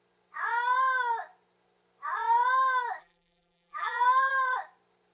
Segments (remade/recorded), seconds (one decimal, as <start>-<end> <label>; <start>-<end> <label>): 0.0-3.0 recorded; 3.0-4.3 remade; 4.3-5.1 recorded